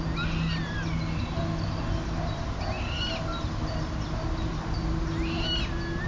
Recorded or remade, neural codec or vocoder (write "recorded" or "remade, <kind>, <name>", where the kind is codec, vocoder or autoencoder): recorded